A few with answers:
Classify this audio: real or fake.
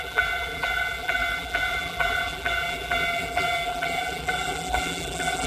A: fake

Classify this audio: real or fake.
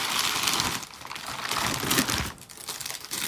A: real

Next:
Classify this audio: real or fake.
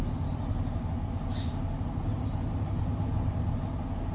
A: real